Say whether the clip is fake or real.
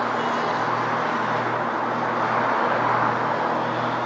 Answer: real